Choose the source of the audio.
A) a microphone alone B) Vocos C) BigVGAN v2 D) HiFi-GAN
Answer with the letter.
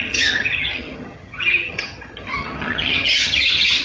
D